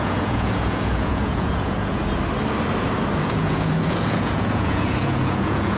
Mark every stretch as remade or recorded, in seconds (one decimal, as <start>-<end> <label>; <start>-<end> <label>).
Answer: 0.0-2.0 remade; 2.0-3.2 recorded; 3.2-5.8 remade